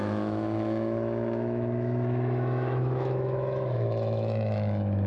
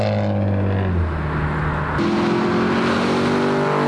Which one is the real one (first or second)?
second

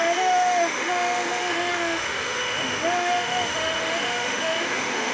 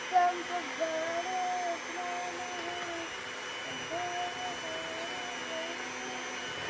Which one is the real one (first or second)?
second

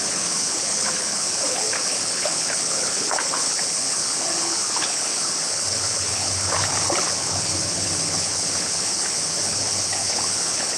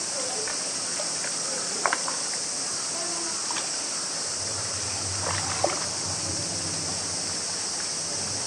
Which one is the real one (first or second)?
second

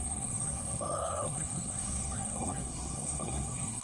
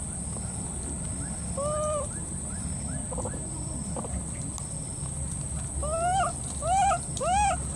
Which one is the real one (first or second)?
second